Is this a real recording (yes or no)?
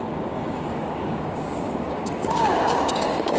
no